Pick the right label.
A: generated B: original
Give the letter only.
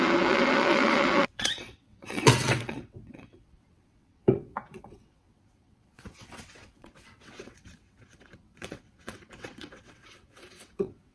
A